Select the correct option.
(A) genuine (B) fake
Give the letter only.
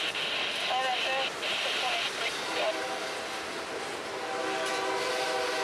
A